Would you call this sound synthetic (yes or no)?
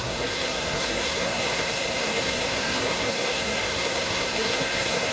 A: yes